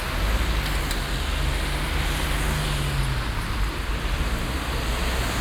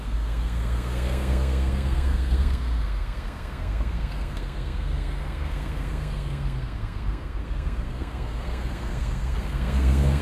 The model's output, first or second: second